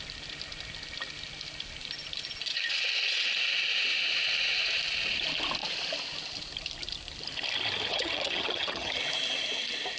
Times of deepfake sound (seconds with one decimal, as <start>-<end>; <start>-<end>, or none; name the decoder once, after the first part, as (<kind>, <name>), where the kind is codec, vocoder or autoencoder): 7.9-9.0 (vocoder, HiFi-GAN)